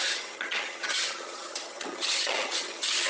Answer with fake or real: fake